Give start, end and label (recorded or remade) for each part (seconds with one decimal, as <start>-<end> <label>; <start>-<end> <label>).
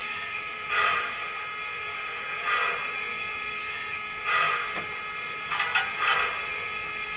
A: 0.0-1.4 remade; 1.4-7.2 recorded